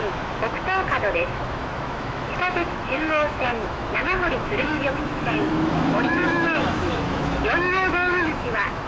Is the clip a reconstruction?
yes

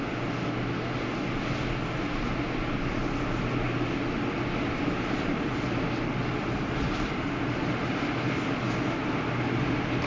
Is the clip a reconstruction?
no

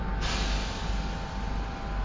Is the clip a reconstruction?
no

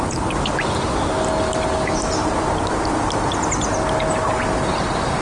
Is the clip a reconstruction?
no